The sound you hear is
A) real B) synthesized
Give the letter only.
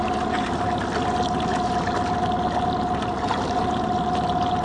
A